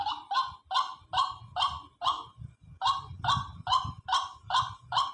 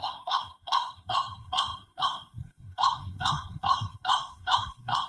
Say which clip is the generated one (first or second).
second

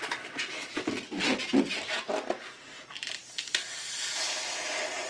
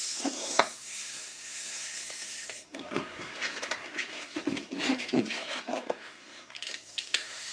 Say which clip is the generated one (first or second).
second